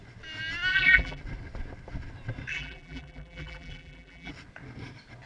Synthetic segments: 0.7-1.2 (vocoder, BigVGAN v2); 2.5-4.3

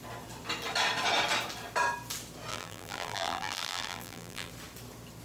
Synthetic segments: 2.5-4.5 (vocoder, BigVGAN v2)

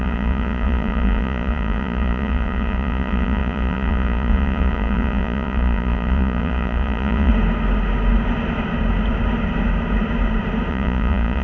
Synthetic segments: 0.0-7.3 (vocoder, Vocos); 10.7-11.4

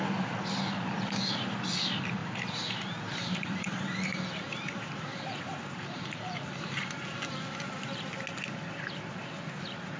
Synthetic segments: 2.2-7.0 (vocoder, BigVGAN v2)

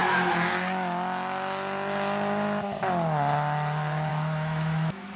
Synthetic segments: 4.1-5.2 (autoencoder, DAC-VAE)